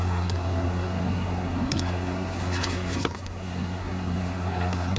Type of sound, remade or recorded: remade